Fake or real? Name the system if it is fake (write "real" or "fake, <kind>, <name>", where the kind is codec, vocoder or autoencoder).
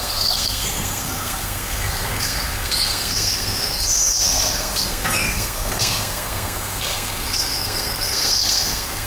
fake, codec, SNAC